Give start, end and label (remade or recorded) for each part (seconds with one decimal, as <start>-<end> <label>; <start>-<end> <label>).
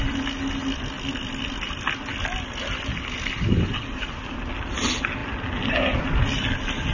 0.0-6.9 recorded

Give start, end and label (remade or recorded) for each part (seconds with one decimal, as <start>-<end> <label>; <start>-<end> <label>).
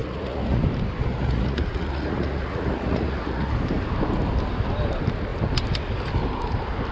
0.0-0.6 remade; 0.6-1.1 recorded; 1.1-3.5 remade; 3.5-6.9 recorded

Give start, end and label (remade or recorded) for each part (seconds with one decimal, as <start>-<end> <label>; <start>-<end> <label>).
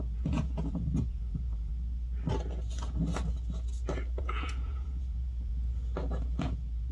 0.0-1.7 remade; 1.7-4.2 recorded; 4.2-5.5 remade; 5.5-6.4 recorded; 6.4-6.9 remade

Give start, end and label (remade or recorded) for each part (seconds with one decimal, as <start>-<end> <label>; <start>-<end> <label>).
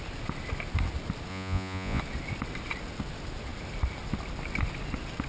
0.0-1.3 recorded; 1.3-2.0 remade; 2.0-5.3 recorded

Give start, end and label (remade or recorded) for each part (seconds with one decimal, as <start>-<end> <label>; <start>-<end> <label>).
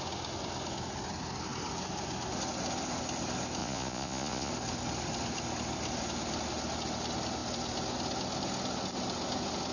0.0-3.6 recorded; 3.6-4.5 remade; 4.5-9.7 recorded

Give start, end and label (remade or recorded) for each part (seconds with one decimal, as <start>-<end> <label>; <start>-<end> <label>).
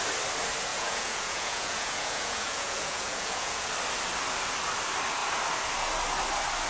0.0-0.7 recorded; 0.7-3.7 remade; 3.7-6.7 recorded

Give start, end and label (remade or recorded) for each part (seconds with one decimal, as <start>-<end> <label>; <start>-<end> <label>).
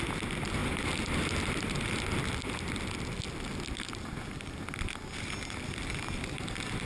0.0-6.8 recorded